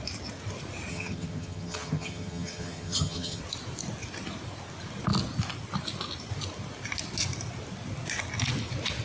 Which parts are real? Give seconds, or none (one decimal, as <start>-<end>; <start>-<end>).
0.0-0.9; 3.4-9.0